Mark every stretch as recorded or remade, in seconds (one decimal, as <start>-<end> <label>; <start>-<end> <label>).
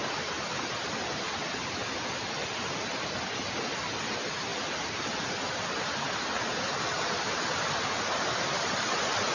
0.0-9.3 recorded